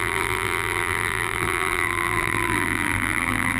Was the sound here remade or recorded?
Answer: remade